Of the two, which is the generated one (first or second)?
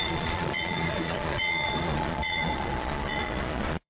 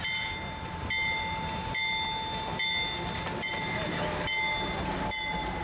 first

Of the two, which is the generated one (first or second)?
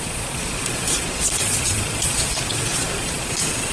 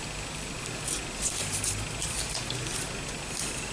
first